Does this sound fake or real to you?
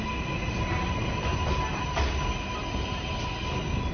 real